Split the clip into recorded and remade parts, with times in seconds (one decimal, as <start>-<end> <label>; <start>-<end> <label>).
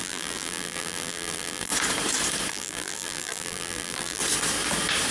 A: 0.0-1.7 remade; 1.7-2.5 recorded; 2.5-4.2 remade; 4.2-5.1 recorded